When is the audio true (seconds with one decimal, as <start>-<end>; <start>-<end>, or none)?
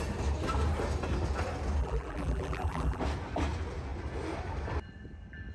0.0-1.8; 3.0-5.5